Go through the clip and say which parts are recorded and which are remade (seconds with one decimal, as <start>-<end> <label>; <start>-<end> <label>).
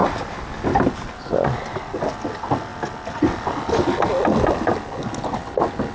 0.0-5.9 recorded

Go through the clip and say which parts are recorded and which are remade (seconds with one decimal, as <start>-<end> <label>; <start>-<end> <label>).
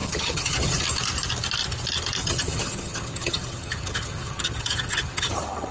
0.0-0.8 remade; 0.8-2.2 recorded; 2.2-5.7 remade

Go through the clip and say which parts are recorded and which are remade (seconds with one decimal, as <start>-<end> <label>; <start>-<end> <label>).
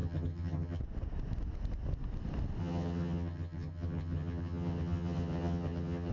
0.0-0.8 remade; 0.8-2.6 recorded; 2.6-6.1 remade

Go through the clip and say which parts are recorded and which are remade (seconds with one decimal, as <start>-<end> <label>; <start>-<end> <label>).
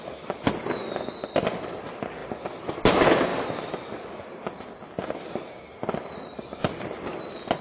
0.0-7.6 recorded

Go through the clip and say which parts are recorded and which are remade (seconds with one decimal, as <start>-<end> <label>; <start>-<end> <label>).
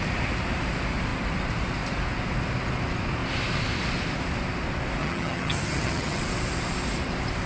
0.0-5.0 recorded; 5.0-6.2 remade; 6.2-7.5 recorded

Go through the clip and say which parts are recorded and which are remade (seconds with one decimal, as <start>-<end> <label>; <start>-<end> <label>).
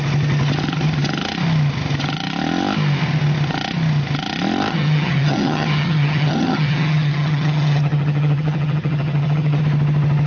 0.0-4.7 recorded; 4.7-9.6 remade; 9.6-10.3 recorded